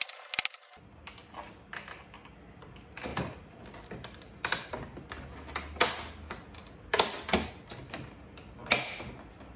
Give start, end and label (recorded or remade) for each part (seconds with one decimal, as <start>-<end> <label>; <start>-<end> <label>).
0.0-3.1 recorded; 3.1-5.2 remade; 5.2-9.6 recorded